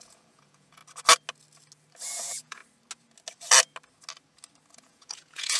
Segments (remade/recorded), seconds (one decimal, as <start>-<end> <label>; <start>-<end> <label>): 0.0-0.8 remade; 0.8-2.1 recorded; 2.1-2.6 remade; 2.6-4.8 recorded; 4.8-5.6 remade